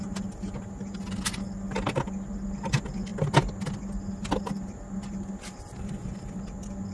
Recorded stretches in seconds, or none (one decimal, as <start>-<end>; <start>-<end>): 0.0-6.9